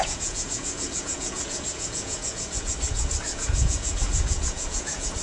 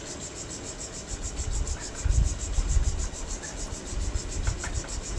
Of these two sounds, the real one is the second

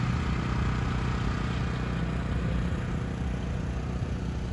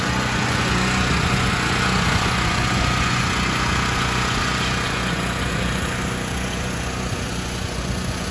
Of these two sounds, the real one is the first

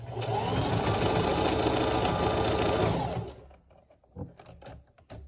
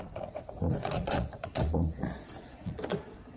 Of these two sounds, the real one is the first